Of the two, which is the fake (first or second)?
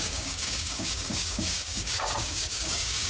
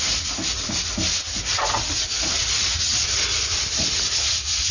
first